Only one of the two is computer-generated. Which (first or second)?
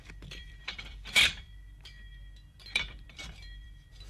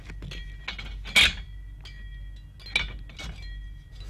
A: first